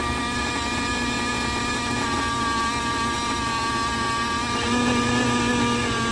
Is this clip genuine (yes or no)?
yes